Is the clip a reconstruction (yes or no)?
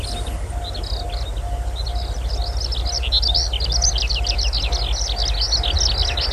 no